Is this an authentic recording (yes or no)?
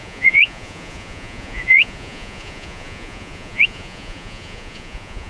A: no